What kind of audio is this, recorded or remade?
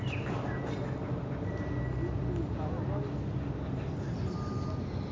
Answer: recorded